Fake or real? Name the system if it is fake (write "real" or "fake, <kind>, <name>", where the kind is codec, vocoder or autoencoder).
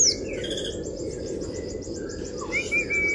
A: real